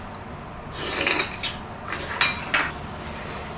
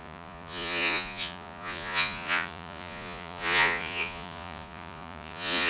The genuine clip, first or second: first